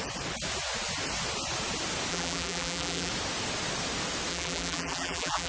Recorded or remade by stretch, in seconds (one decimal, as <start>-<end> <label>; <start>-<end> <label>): 0.0-2.1 recorded; 2.1-3.1 remade; 3.1-4.3 recorded; 4.3-5.5 remade